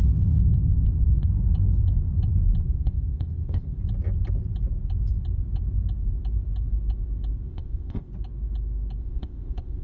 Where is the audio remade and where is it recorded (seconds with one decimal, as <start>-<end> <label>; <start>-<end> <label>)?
0.0-1.3 remade; 1.3-2.6 recorded; 2.6-3.8 remade; 3.8-7.5 recorded; 7.5-8.1 remade; 8.1-9.0 recorded; 9.0-9.8 remade